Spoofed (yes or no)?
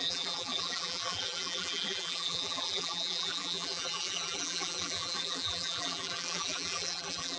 yes